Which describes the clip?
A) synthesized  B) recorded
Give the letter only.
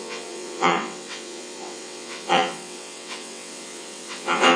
A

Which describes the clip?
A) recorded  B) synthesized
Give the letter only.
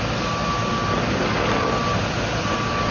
A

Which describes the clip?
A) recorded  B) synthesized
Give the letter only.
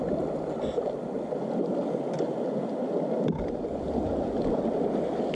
A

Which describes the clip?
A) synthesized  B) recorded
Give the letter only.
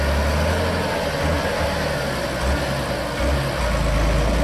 B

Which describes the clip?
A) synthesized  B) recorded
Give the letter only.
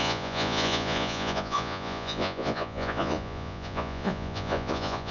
A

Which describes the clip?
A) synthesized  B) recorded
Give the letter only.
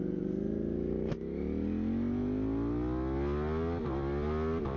B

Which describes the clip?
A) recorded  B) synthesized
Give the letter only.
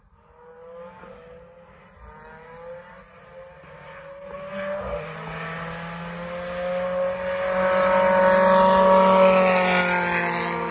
A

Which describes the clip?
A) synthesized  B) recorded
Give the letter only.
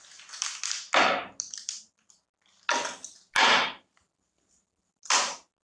B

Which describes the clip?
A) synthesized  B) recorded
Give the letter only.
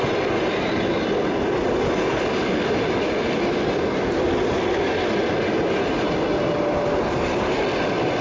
B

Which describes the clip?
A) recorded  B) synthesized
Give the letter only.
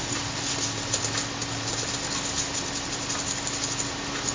A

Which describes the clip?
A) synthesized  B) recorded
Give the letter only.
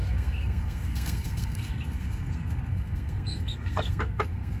A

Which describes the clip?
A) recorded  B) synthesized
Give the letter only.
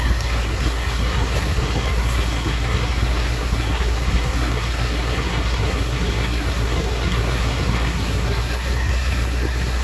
B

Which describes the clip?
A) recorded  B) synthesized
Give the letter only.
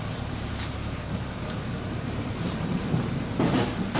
B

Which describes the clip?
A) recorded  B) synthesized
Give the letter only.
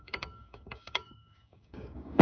B